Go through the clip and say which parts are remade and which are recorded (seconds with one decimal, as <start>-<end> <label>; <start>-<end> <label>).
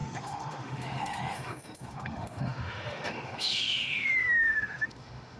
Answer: 0.0-5.4 remade